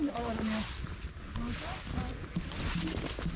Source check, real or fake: real